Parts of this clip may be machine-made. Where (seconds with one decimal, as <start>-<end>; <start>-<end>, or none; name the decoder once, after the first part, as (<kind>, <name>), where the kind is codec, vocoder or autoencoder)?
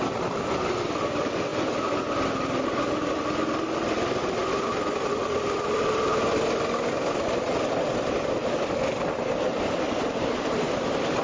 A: none